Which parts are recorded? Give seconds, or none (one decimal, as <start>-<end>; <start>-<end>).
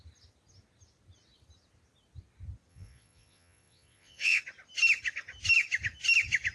0.0-2.7; 4.4-6.5